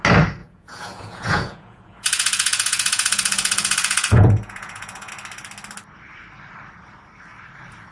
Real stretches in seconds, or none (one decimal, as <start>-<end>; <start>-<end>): 0.0-0.4; 5.1-7.9

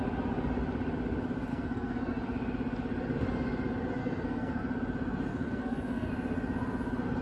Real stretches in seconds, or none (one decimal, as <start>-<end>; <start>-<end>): 0.0-1.5; 2.1-4.0; 4.6-5.3; 6.1-7.2

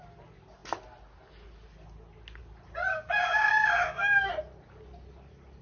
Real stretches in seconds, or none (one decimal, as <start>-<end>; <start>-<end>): 0.0-2.9; 4.3-5.6

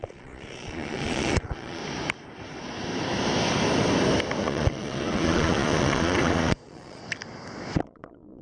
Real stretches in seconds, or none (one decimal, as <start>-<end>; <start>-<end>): 1.8-4.4; 7.0-7.8

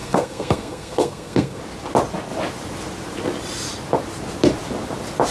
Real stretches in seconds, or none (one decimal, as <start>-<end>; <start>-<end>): 1.6-5.3

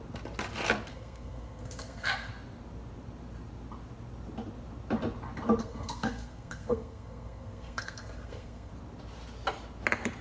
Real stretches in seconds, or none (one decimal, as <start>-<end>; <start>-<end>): 0.0-0.9; 2.3-5.6; 8.7-10.2

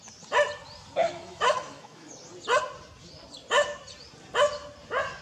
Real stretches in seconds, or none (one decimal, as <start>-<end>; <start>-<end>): 0.0-1.0; 2.1-5.2

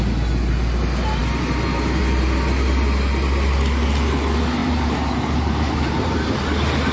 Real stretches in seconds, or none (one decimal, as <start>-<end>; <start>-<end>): 0.0-4.6; 6.3-6.9